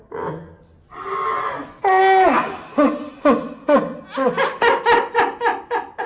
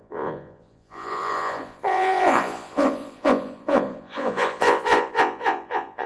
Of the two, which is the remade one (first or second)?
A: second